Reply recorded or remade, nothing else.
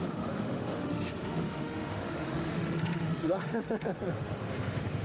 remade